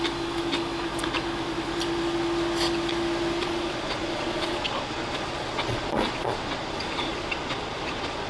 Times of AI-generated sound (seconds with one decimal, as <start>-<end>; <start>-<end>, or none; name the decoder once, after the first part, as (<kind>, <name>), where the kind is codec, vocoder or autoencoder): 3.4-8.3 (vocoder, Vocos)